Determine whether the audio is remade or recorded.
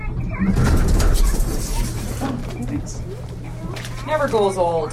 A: remade